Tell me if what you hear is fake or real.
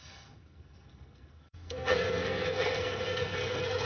fake